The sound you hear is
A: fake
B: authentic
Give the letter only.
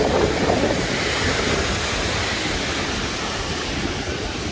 B